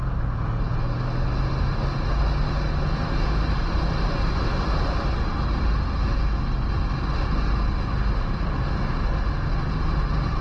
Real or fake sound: real